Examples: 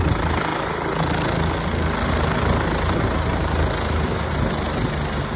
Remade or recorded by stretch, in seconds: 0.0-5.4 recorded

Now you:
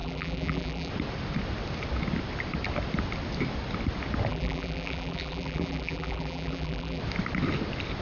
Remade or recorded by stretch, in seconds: 0.0-0.9 remade; 0.9-4.3 recorded; 4.3-7.0 remade; 7.0-8.0 recorded

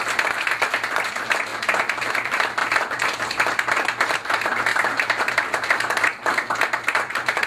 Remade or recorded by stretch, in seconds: 0.0-1.5 remade; 1.5-2.1 recorded; 2.1-6.1 remade; 6.1-6.9 recorded; 6.9-7.5 remade

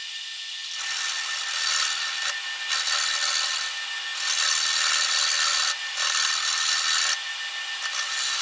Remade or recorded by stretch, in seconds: 0.0-8.4 recorded

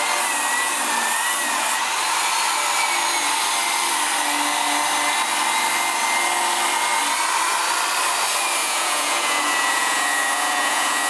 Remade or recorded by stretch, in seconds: 0.0-8.6 recorded; 8.6-11.1 remade

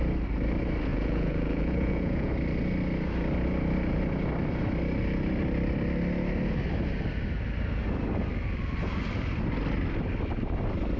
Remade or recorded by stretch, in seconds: 0.0-0.9 recorded; 0.9-2.3 remade; 2.3-11.0 recorded

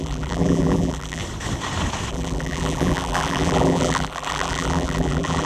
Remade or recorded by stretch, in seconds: 0.0-1.2 remade; 1.2-2.1 recorded; 2.1-5.5 remade